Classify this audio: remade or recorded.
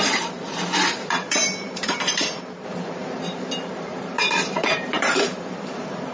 remade